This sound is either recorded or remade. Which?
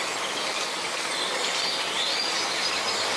recorded